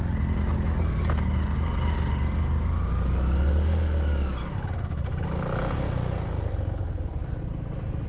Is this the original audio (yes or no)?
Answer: yes